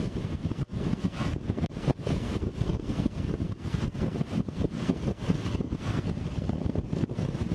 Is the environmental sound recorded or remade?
remade